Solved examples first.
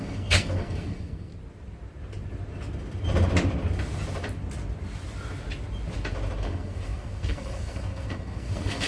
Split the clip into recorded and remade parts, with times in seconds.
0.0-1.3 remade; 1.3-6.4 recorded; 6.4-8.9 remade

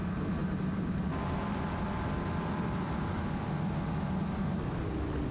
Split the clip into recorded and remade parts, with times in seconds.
0.0-0.4 recorded; 0.4-3.4 remade; 3.4-5.3 recorded

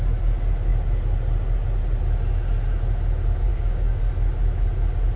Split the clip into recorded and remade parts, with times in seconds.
0.0-3.5 recorded; 3.5-4.0 remade; 4.0-5.2 recorded

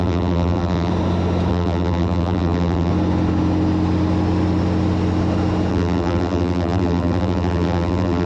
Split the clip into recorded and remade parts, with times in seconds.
0.0-0.9 remade; 0.9-1.5 recorded; 1.5-2.9 remade; 2.9-5.7 recorded; 5.7-8.3 remade

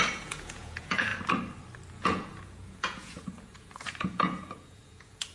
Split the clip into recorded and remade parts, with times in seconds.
0.0-1.1 remade; 1.1-1.9 recorded; 1.9-5.3 remade

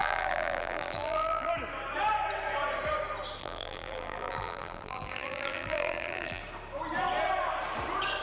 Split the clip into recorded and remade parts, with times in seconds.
0.0-1.5 remade; 1.5-3.4 recorded; 3.4-6.4 remade; 6.4-8.2 recorded